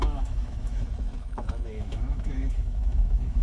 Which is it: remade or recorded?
remade